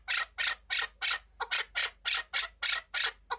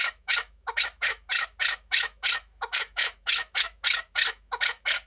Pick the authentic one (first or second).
first